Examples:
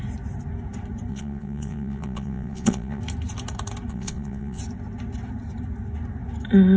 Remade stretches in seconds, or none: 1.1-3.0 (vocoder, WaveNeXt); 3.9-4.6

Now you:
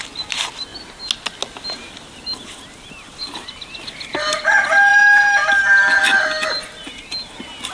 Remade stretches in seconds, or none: none

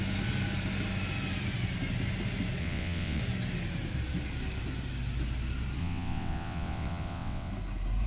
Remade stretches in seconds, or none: 2.6-3.2 (vocoder, WaveNeXt); 5.8-7.5